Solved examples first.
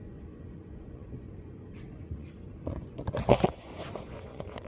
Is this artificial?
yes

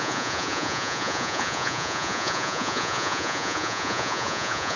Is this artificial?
yes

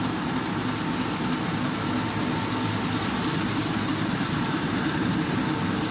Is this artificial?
no